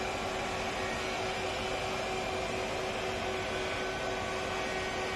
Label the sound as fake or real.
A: real